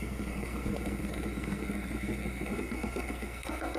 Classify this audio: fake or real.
fake